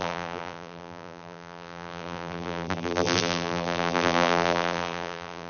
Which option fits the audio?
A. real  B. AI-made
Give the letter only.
B